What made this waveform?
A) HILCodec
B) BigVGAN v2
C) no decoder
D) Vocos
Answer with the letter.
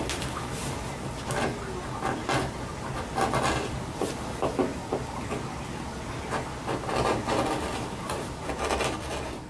C